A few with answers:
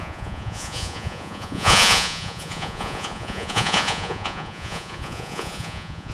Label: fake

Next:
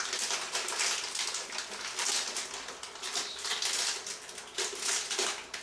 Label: real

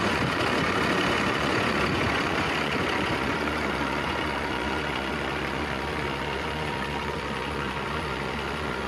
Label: fake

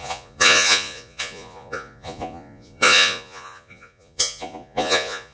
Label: fake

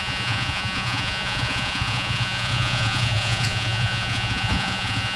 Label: fake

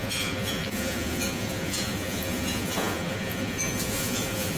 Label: fake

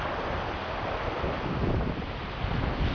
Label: real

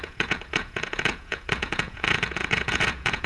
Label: fake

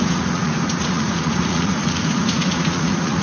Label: fake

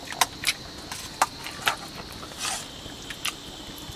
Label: real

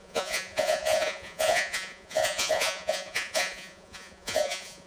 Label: fake